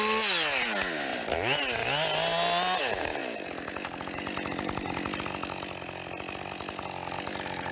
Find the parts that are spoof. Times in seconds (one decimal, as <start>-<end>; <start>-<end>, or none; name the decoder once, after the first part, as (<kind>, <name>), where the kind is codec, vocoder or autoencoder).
3.2-3.7 (vocoder, BigVGAN v2)